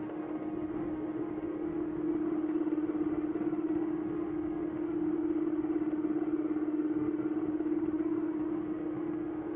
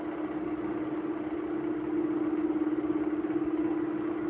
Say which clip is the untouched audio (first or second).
second